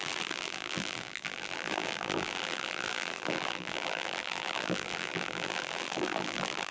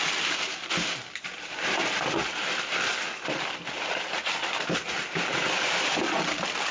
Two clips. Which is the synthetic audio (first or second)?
first